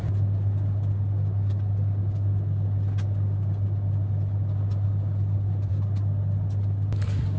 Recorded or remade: recorded